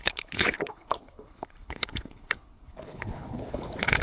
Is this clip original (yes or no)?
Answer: no